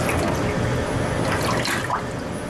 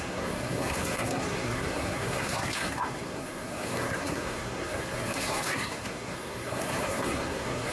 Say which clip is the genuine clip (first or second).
first